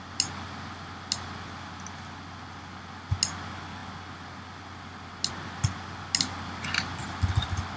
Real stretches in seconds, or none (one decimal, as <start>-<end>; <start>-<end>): 0.0-7.8